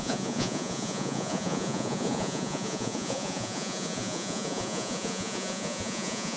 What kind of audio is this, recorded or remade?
remade